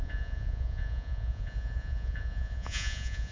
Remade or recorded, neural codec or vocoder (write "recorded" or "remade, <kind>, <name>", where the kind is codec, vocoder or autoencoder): remade, vocoder, Vocos